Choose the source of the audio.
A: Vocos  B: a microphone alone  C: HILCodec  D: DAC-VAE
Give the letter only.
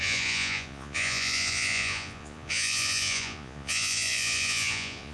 A